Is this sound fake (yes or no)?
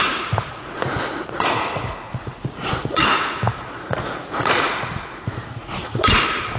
yes